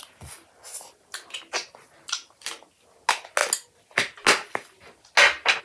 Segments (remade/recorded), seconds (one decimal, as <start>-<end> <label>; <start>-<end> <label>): 0.0-5.6 recorded